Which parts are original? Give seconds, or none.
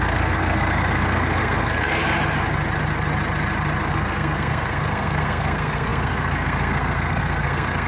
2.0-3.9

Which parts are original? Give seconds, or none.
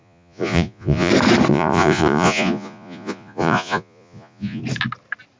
1.1-1.5; 4.6-5.4